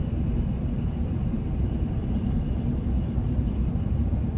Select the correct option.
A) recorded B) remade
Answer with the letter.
A